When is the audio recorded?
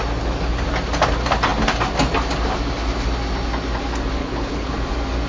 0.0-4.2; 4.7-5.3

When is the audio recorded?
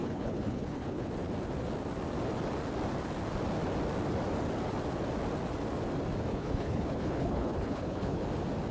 1.1-6.3; 8.2-8.7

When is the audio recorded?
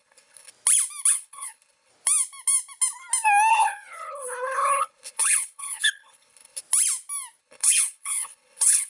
0.5-1.1; 1.9-3.5; 6.6-7.4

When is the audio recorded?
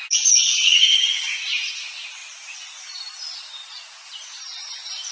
0.0-5.1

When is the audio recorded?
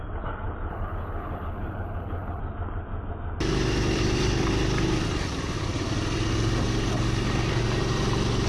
0.0-0.7; 2.4-8.5